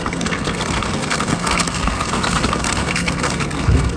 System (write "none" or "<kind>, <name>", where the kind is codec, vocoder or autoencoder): codec, SNAC